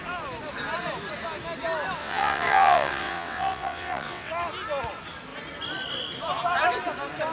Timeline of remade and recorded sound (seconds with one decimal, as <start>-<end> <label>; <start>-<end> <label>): 0.0-2.0 recorded; 2.0-4.3 remade; 4.3-7.3 recorded